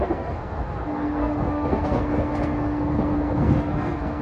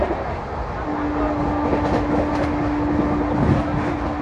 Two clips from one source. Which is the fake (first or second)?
first